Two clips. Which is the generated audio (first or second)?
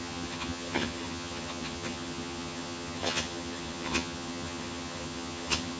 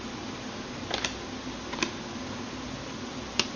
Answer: first